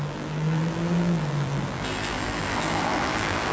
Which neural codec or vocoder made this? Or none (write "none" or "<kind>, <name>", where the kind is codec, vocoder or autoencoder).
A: vocoder, BigVGAN v2